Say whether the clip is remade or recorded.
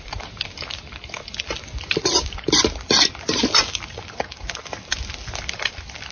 recorded